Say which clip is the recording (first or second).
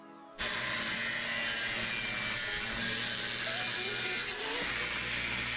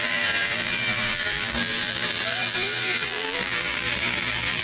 first